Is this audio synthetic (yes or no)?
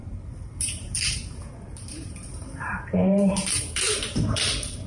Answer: yes